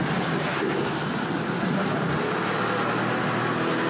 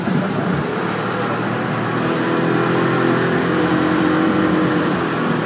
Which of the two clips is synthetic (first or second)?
second